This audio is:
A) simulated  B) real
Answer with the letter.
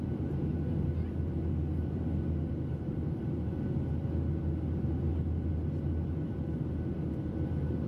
B